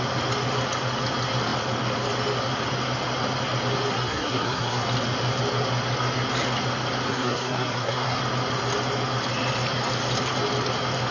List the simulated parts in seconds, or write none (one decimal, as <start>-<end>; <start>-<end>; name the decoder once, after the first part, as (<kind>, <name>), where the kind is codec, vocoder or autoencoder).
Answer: 3.9-4.8 (codec, SNAC); 7.1-8.2